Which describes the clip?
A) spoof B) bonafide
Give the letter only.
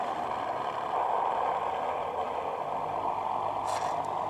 B